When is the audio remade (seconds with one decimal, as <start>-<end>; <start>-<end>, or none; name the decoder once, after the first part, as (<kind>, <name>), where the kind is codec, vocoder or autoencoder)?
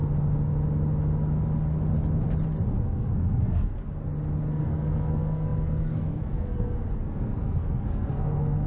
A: 2.8-3.7 (codec, SNAC); 4.5-8.7